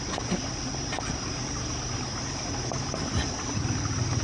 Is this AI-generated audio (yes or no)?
no